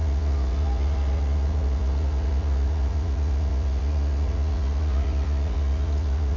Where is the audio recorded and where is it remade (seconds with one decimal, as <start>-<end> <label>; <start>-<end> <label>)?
0.0-6.4 remade